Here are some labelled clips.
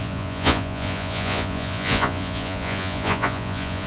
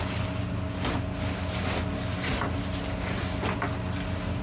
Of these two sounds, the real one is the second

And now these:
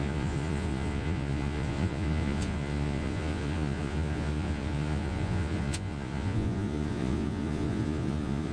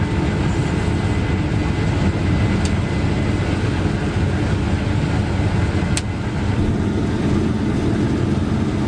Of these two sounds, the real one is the second